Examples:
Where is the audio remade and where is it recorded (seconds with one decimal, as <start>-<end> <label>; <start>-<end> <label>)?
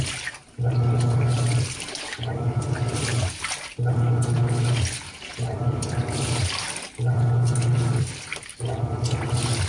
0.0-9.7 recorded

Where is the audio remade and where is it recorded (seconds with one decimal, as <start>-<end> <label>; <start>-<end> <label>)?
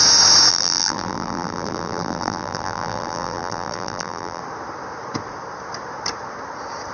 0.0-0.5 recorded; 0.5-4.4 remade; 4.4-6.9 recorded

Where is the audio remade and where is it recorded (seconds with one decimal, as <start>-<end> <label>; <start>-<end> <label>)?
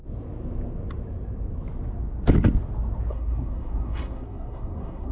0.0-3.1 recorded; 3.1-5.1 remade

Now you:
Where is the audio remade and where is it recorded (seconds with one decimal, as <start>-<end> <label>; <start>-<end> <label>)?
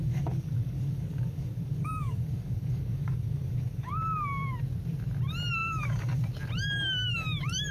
0.0-3.9 remade; 3.9-5.6 recorded; 5.6-6.2 remade; 6.2-7.7 recorded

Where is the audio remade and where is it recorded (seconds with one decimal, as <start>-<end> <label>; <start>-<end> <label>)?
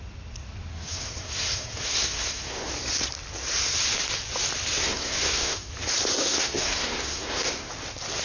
0.0-0.7 recorded; 0.7-2.7 remade; 2.7-4.8 recorded; 4.8-5.7 remade; 5.7-6.2 recorded; 6.2-7.7 remade; 7.7-8.2 recorded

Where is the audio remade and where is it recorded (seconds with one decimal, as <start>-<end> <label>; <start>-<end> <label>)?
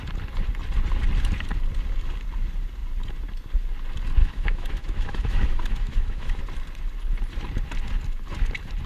0.0-4.2 recorded; 4.2-6.4 remade; 6.4-8.9 recorded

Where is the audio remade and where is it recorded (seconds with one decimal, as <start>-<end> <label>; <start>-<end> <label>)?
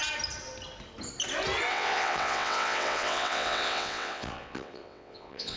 0.0-1.7 recorded; 1.7-5.6 remade